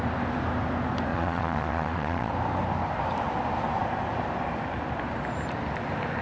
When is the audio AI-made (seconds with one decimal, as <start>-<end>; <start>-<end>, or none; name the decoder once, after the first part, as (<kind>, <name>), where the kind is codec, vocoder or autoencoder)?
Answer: 1.1-2.3 (vocoder, Vocos)